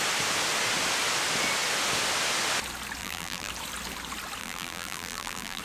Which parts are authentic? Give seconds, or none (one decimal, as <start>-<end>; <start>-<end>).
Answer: 0.0-3.0; 3.5-4.4